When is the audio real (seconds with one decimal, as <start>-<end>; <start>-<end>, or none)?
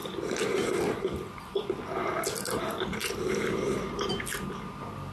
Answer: 0.0-3.0; 4.1-5.1